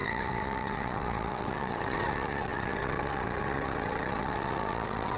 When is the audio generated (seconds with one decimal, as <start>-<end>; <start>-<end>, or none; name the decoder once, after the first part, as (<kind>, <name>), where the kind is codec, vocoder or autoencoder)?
0.0-5.2 (vocoder, WaveNeXt)